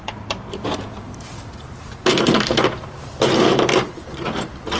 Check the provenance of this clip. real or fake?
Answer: fake